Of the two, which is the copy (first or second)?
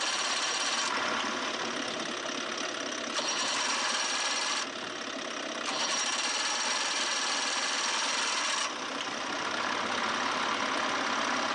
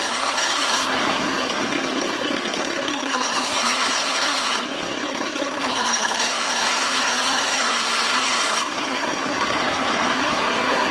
second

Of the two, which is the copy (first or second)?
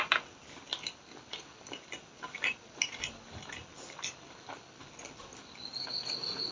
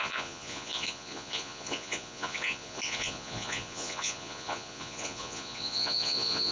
second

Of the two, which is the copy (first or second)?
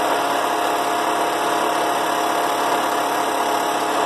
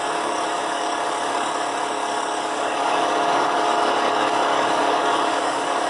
second